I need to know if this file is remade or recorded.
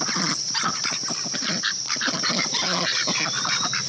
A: remade